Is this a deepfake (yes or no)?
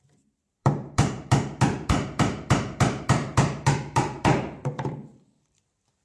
yes